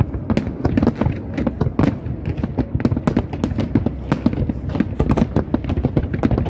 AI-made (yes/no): no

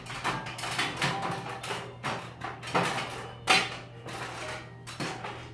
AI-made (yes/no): no